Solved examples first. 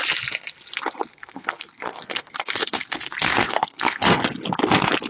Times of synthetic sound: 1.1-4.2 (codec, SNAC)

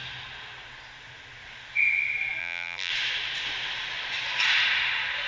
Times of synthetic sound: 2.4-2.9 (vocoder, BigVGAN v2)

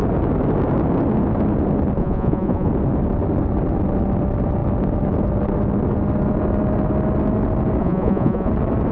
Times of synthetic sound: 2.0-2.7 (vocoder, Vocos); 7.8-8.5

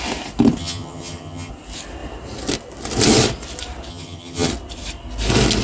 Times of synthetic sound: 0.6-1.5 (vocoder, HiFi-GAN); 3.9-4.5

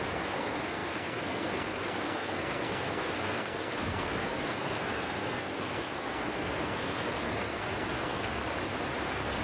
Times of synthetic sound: 0.0-8.4 (codec, SNAC); 9.0-9.4

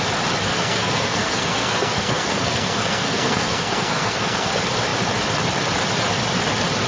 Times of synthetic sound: 0.5-4.5 (codec, SNAC)

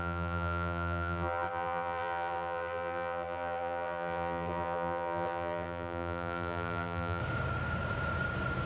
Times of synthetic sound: 0.0-7.2 (vocoder, BigVGAN v2)